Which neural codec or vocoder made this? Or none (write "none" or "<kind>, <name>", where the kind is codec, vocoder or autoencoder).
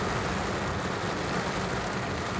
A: none